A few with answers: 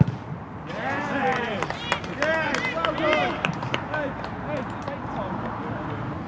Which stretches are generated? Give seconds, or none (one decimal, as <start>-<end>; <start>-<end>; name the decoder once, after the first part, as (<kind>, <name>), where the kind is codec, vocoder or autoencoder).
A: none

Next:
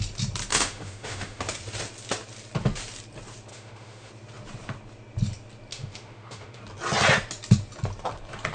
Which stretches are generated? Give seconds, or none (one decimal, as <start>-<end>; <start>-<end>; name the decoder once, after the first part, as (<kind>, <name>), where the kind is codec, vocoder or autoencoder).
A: 0.5-1.4 (autoencoder, DAC-VAE); 3.5-4.1; 5.7-6.6

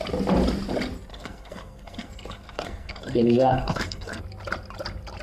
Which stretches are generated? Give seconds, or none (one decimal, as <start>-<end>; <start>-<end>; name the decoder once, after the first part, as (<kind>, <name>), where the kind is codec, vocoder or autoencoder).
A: 1.1-4.2 (codec, SNAC)